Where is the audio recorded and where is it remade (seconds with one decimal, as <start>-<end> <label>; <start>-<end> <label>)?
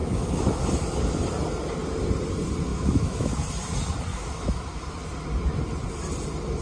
0.0-0.6 remade; 0.6-2.7 recorded; 2.7-3.3 remade; 3.3-4.1 recorded; 4.1-4.8 remade; 4.8-6.6 recorded